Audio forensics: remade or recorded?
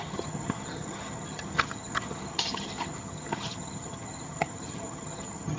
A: remade